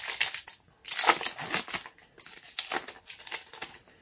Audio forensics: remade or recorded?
recorded